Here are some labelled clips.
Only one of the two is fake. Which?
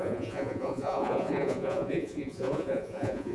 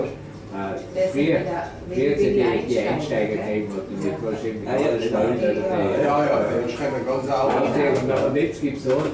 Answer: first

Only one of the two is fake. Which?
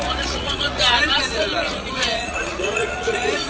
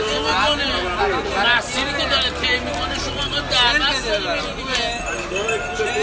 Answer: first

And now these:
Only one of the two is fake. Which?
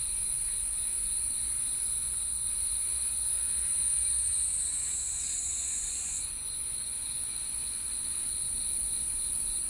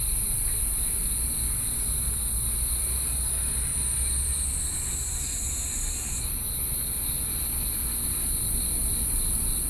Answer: first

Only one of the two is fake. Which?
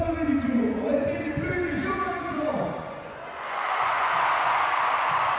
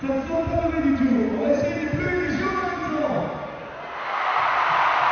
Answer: first